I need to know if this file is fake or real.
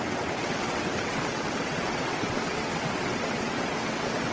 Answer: fake